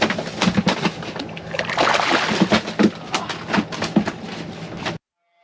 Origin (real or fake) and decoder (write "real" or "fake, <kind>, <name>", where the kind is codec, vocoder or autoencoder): real